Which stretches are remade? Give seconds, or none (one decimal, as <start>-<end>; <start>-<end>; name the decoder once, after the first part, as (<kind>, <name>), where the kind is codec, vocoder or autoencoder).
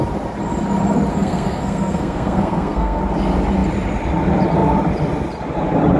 1.1-3.0 (codec, SNAC)